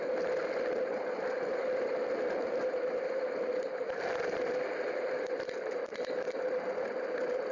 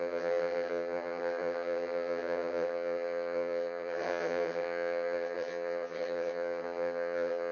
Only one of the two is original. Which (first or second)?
first